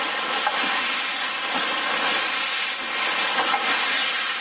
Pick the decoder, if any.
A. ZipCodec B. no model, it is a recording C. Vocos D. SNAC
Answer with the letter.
B